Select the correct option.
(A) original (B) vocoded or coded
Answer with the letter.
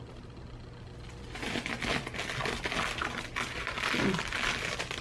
A